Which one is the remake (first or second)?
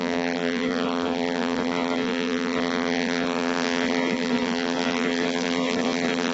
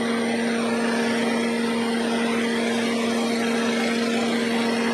first